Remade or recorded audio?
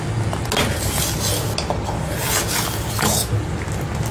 recorded